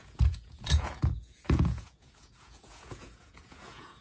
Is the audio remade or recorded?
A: remade